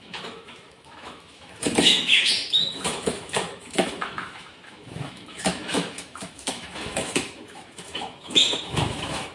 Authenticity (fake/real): fake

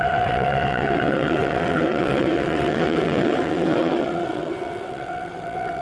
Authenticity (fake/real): fake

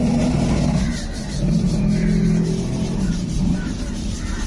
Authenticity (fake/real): fake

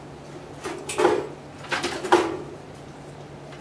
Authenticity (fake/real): real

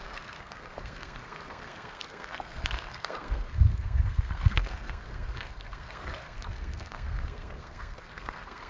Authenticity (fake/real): fake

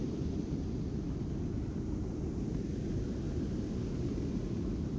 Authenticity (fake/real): real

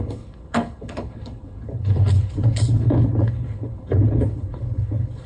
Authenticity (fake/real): fake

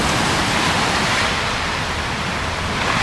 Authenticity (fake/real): real